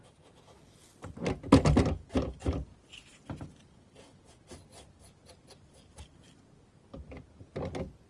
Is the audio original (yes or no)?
yes